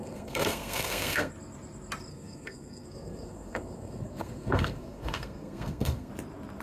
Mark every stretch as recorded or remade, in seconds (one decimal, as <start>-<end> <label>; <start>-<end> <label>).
0.0-1.3 remade; 1.3-2.1 recorded; 2.1-6.1 remade; 6.1-6.6 recorded